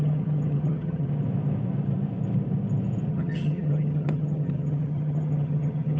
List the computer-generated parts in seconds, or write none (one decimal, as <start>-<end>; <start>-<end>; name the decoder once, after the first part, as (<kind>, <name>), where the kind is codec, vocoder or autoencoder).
0.0-1.1 (vocoder, HiFi-GAN); 3.1-6.0